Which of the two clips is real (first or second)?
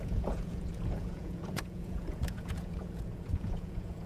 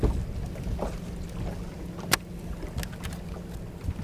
second